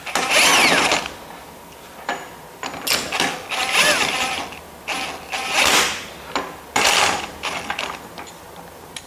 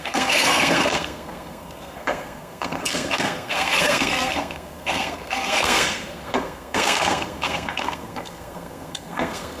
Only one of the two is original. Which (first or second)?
first